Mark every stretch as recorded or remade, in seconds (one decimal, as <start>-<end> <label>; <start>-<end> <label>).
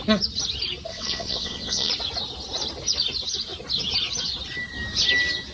0.0-0.9 recorded; 0.9-1.9 remade; 1.9-5.5 recorded